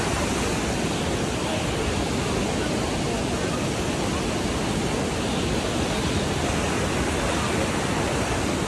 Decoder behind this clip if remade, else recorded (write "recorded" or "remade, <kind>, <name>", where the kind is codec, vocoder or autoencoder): recorded